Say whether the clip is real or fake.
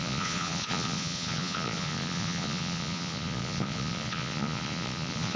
fake